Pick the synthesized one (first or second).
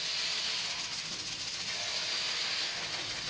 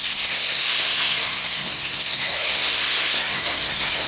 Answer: second